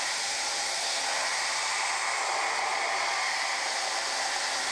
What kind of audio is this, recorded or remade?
recorded